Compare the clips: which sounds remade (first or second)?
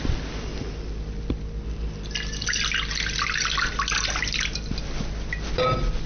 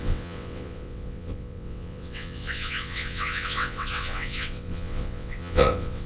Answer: second